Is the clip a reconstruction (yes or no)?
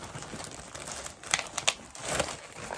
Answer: no